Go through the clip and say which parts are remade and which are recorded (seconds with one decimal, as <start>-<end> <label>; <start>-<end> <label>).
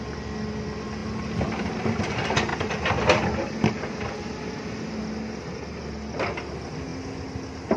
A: 0.0-7.8 recorded